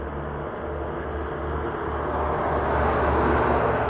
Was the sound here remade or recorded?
recorded